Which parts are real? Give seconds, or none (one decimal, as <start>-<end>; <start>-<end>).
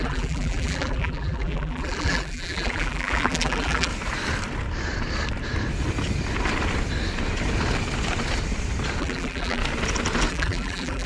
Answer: 3.9-9.0; 9.6-10.3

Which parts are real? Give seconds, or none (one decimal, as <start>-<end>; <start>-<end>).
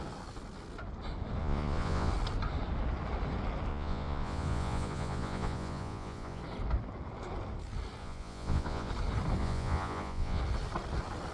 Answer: 0.0-1.4; 2.1-3.7; 6.4-8.0; 8.9-9.4; 10.4-11.3